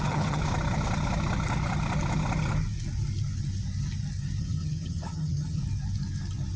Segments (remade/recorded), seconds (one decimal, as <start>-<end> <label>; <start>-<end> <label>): 0.0-0.4 remade; 0.4-4.4 recorded; 4.4-5.6 remade; 5.6-6.6 recorded